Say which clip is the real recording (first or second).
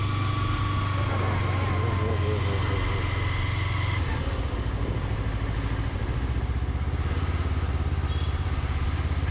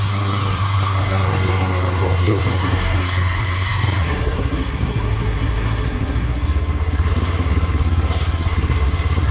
first